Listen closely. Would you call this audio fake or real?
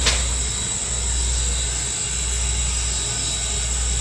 real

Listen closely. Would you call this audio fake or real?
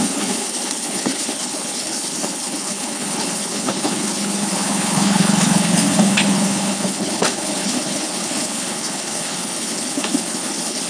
fake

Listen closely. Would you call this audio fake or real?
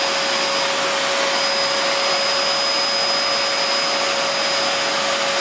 real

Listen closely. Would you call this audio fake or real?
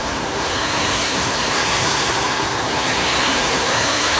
fake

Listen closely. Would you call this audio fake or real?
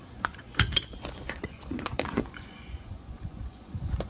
fake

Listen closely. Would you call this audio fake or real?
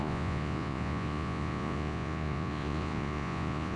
fake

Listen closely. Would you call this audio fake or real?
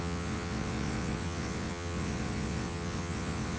fake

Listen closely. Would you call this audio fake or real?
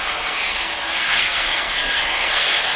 fake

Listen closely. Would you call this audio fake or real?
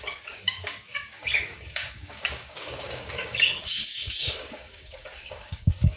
fake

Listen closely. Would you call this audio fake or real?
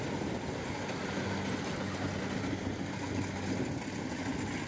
real